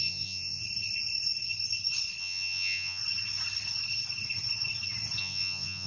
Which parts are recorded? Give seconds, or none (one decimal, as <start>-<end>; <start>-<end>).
0.6-2.2; 3.0-5.2